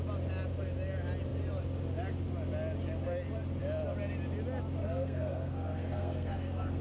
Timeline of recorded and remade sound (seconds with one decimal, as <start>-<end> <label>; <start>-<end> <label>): 0.0-4.8 recorded; 4.8-6.8 remade